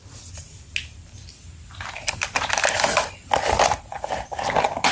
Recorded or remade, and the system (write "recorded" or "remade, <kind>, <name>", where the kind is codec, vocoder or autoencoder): recorded